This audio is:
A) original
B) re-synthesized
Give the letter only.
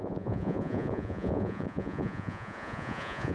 B